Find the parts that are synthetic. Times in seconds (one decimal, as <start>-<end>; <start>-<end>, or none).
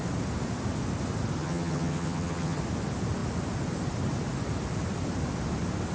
1.4-2.6